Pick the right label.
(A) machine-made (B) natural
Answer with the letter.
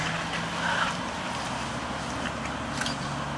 B